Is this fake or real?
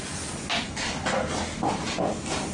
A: real